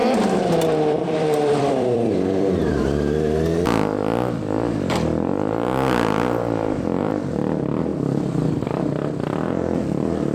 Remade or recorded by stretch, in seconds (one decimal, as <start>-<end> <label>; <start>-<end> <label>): 0.0-0.5 remade; 0.5-1.0 recorded; 1.0-2.7 remade; 2.7-7.9 recorded; 7.9-8.4 remade; 8.4-10.3 recorded